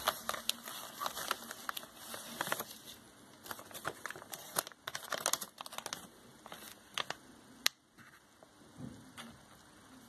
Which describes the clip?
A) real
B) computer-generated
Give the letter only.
A